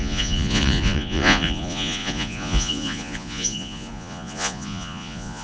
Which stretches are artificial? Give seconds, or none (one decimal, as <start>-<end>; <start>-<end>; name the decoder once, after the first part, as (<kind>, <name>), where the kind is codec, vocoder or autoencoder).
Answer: 0.0-5.4 (vocoder, Vocos)